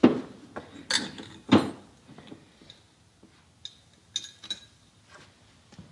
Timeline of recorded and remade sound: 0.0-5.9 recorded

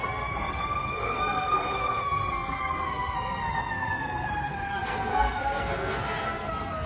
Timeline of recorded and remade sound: 0.0-6.9 remade